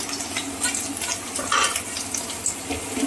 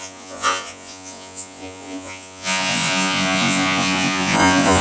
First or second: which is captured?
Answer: first